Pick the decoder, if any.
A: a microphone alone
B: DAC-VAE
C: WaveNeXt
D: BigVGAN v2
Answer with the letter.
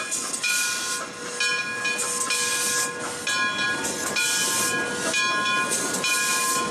A